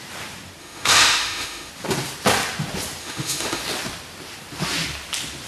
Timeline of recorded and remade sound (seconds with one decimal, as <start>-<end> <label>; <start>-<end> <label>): 0.0-0.6 recorded; 0.6-1.7 remade; 1.7-3.0 recorded; 3.0-3.6 remade; 3.6-5.5 recorded